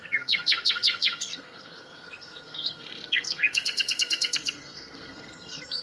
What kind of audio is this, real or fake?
fake